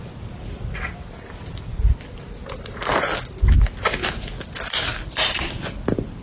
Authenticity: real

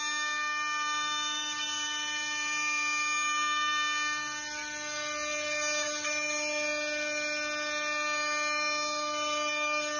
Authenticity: real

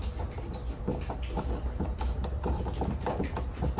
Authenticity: real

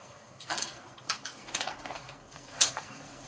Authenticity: fake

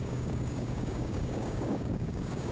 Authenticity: fake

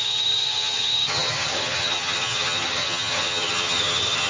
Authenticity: fake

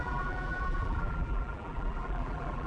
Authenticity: fake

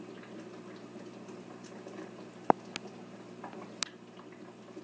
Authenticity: real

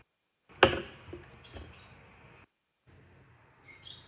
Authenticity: real